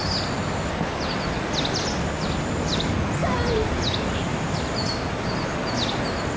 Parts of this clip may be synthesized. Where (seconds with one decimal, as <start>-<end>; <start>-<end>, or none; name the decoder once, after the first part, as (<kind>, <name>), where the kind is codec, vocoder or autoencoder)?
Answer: 3.2-3.8 (vocoder, BigVGAN v2); 4.3-5.1